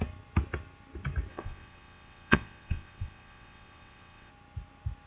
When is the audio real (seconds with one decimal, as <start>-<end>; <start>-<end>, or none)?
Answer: 0.0-1.3; 4.3-5.1

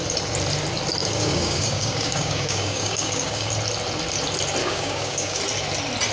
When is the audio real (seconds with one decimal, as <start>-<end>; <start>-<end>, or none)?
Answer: 0.0-1.0; 3.5-4.6; 5.4-6.1

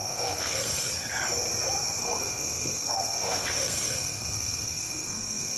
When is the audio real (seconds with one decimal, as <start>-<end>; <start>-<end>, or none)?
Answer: 0.9-2.0

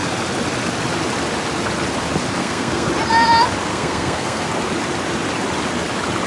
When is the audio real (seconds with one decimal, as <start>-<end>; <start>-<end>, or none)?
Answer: 0.0-2.4; 2.9-3.7; 4.5-6.3

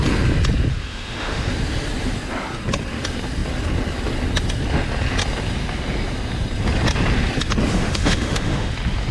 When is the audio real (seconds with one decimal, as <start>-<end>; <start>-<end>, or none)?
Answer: 0.0-0.7; 1.5-7.7; 8.7-9.1

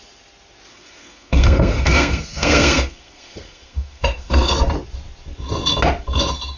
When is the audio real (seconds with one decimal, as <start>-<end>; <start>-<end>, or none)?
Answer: 0.0-0.7; 4.7-6.6